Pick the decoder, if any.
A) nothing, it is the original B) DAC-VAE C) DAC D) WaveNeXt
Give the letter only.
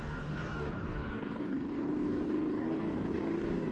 C